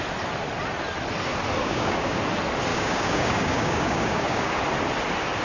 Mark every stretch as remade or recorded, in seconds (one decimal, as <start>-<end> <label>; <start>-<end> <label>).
0.0-1.6 recorded; 1.6-2.2 remade; 2.2-2.7 recorded; 2.7-4.6 remade; 4.6-5.4 recorded